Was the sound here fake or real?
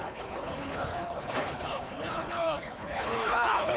fake